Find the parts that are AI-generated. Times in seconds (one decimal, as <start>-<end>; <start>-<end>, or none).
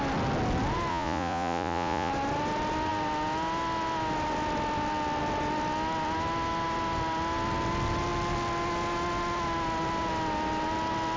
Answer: 0.9-2.1